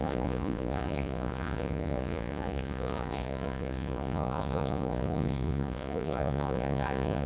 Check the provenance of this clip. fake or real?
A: fake